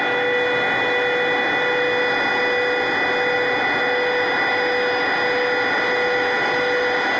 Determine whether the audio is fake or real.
real